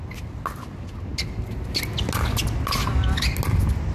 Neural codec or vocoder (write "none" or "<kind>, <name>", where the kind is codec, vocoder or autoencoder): none